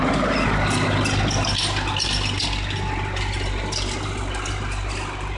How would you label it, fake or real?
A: real